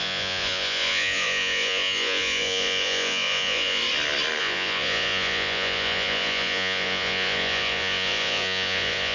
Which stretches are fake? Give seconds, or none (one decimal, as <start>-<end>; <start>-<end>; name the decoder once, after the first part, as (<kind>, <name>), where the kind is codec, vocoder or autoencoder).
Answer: 0.0-3.8 (vocoder, Vocos); 4.4-9.1